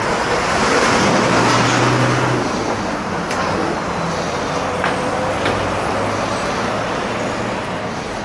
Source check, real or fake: real